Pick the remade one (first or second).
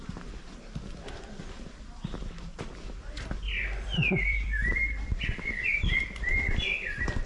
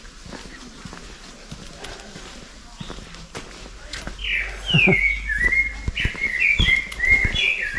first